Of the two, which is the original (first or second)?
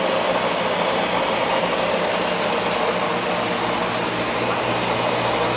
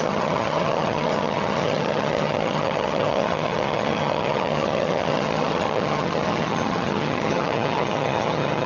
first